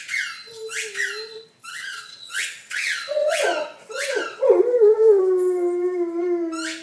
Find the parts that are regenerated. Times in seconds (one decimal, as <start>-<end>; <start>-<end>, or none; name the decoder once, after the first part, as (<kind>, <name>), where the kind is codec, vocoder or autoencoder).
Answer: 1.7-5.2 (vocoder, WaveNeXt)